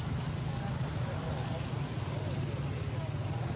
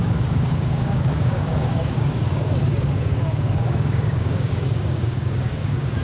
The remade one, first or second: second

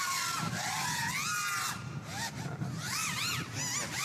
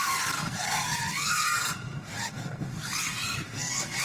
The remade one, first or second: second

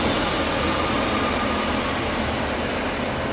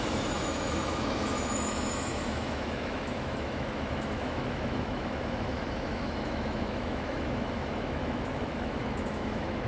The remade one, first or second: second